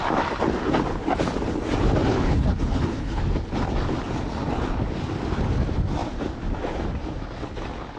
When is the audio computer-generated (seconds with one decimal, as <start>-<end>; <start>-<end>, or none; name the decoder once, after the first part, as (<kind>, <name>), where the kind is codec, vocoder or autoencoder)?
2.1-3.2 (codec, HILCodec)